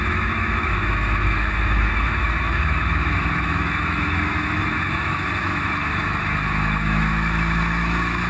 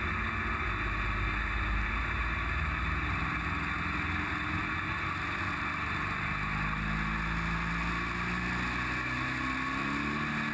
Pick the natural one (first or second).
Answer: second